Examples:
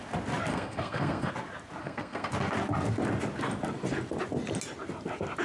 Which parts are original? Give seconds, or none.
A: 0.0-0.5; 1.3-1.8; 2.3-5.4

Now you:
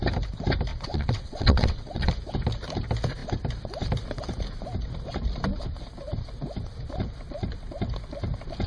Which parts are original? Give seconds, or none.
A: 0.0-0.7; 2.1-8.7

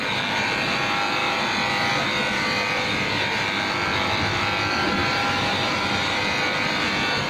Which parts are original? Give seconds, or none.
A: 0.0-5.0; 6.2-7.3

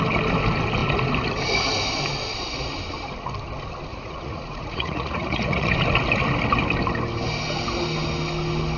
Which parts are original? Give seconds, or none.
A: 0.0-3.9; 5.7-8.8

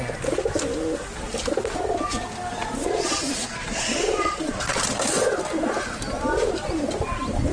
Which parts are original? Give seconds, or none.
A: 0.0-2.8; 4.8-7.5

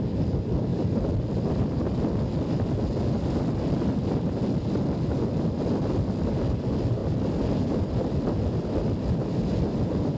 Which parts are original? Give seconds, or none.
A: 0.0-10.2